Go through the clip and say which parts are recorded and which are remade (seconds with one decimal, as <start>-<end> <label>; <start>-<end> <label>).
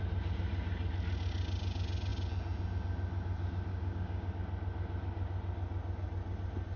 0.0-3.7 recorded; 3.7-4.3 remade; 4.3-6.8 recorded